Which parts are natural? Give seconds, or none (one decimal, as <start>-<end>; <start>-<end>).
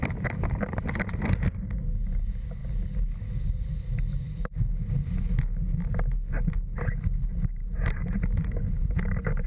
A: 0.0-7.6